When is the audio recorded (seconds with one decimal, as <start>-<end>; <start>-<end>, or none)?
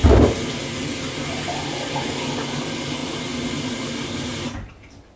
0.0-5.2